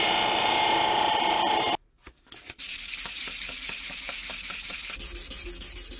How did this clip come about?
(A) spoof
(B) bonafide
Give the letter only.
B